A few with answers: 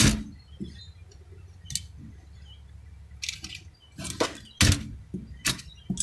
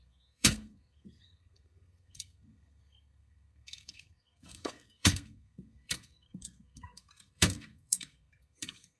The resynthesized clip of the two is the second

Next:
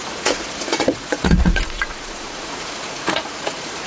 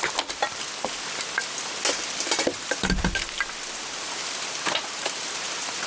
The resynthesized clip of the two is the first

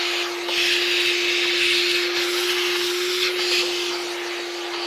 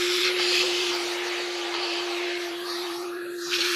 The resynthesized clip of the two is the second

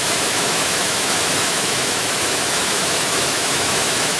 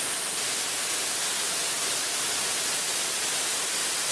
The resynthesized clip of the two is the first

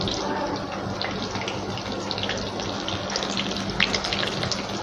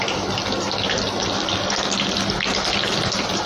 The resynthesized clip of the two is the second